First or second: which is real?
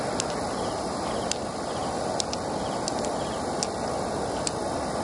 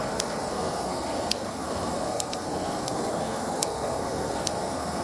first